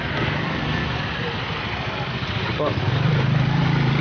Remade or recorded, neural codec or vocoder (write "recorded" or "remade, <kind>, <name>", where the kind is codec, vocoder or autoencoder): remade, vocoder, BigVGAN v2